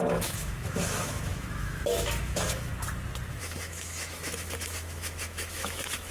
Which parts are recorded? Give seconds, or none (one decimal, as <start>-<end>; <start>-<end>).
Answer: 2.7-3.3